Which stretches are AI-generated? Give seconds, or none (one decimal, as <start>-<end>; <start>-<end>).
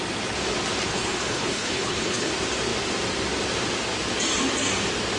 0.9-2.3